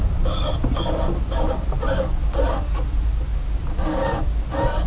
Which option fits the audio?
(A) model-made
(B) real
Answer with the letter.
B